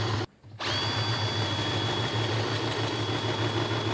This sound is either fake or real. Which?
real